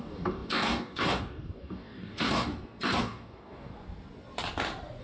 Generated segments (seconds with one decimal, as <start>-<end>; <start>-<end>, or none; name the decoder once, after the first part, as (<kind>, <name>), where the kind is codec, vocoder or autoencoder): 0.0-2.5 (codec, DAC); 3.0-3.7